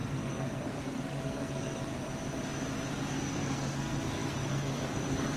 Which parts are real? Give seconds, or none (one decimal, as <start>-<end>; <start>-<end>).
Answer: 1.9-3.1